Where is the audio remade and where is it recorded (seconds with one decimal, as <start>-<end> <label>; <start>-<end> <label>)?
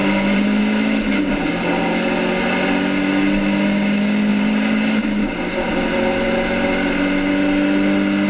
0.0-0.6 remade; 0.6-4.3 recorded; 4.3-5.7 remade; 5.7-8.3 recorded